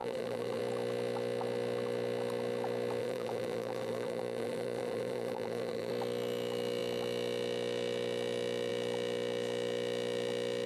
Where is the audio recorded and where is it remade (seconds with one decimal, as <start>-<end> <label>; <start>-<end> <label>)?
0.0-0.6 remade; 0.6-3.0 recorded; 3.0-5.9 remade; 5.9-10.7 recorded